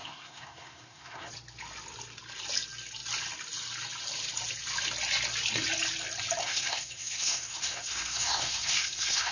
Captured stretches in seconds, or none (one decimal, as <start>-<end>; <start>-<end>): 1.3-6.4